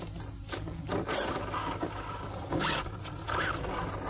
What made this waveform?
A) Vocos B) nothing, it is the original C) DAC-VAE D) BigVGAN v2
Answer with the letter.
B